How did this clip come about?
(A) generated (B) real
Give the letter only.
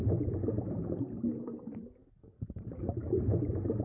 B